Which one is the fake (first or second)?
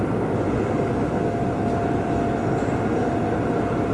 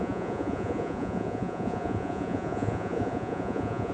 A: second